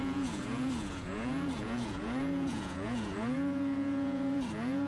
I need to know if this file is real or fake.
fake